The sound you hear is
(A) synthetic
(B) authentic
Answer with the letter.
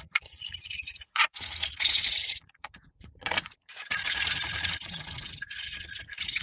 A